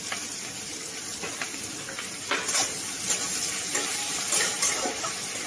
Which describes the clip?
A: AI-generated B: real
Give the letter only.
B